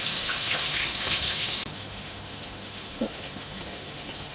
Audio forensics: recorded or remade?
remade